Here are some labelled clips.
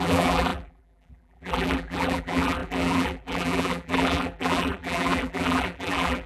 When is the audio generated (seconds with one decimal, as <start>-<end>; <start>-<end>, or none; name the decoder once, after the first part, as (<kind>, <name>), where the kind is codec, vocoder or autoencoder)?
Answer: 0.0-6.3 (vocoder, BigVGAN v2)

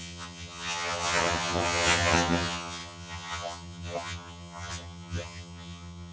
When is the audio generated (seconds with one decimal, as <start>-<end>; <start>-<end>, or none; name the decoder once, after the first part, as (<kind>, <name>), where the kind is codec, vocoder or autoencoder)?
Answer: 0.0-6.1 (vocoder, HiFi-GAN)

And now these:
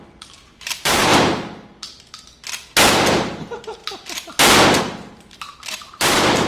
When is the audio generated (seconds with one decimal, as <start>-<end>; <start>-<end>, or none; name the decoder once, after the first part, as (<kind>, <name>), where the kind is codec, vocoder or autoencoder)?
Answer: 0.0-1.1 (vocoder, BigVGAN v2); 2.9-3.8; 4.8-6.5

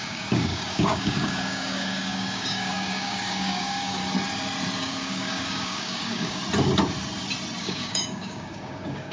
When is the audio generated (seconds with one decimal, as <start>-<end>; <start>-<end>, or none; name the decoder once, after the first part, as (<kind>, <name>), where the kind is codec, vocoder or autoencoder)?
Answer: 0.0-4.0 (codec, DAC); 4.8-6.4; 7.6-9.1